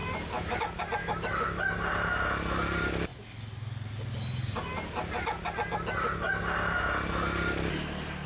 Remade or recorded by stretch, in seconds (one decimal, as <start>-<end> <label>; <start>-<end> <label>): 0.0-0.6 remade; 0.6-1.0 recorded; 1.0-1.6 remade; 1.6-8.3 recorded